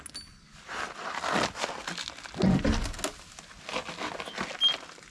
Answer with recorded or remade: recorded